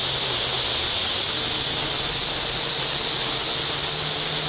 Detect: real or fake real